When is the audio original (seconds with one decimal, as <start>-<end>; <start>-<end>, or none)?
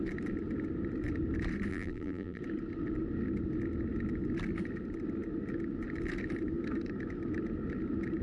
0.0-1.7; 2.4-8.2